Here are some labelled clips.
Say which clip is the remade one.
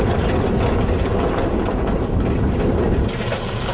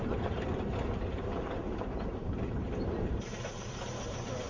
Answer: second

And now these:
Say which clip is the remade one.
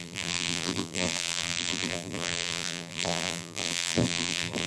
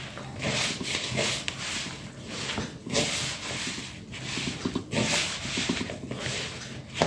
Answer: first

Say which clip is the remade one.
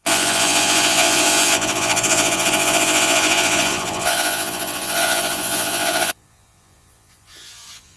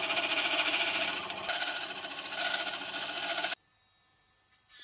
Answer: first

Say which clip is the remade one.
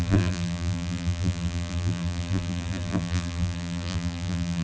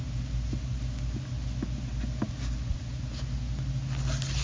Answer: first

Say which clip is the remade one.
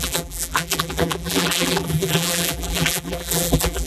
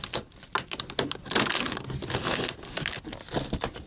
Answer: first